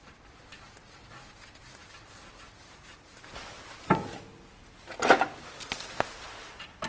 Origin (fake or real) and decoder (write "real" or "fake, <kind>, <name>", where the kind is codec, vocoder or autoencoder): real